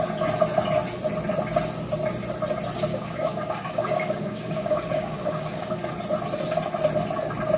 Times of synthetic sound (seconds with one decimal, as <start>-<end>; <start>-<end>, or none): 2.9-5.9

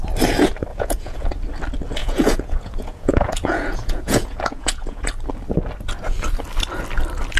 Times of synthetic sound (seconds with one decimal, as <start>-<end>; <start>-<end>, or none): 0.7-1.3; 2.0-5.1